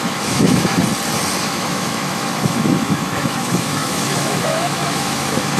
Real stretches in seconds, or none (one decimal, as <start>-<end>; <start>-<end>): 0.8-1.4